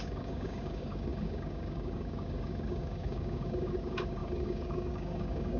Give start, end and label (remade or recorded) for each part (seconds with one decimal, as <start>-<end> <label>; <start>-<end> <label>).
0.0-5.6 remade